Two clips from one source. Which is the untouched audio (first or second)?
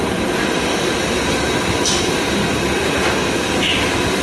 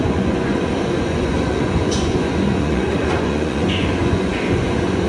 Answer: first